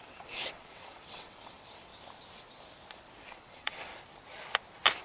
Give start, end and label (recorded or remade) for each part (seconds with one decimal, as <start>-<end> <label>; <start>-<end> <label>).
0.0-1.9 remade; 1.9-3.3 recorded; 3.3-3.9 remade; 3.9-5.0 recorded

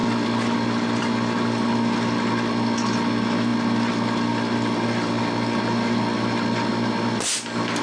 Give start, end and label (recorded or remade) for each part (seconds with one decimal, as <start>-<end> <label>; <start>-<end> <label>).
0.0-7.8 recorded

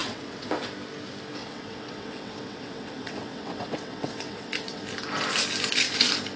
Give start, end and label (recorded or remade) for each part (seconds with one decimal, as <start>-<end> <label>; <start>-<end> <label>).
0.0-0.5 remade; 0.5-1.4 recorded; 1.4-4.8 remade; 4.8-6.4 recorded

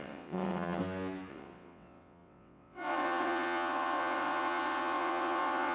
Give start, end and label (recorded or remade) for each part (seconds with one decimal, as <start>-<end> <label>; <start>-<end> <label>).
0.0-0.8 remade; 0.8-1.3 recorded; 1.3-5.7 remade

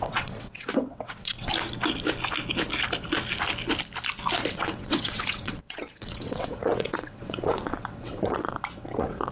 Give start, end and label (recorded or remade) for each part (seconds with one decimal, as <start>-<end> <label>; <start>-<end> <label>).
0.0-1.5 remade; 1.5-4.5 recorded; 4.5-9.3 remade

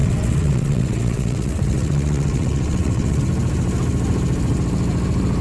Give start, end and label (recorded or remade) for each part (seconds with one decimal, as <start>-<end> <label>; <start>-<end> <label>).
0.0-3.2 remade; 3.2-5.4 recorded

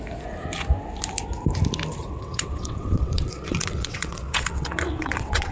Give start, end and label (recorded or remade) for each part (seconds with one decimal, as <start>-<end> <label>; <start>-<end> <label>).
0.0-2.0 recorded; 2.0-5.5 remade